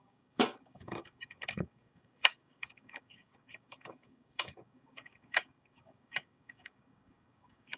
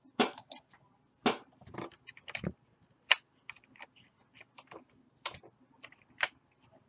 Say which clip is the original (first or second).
second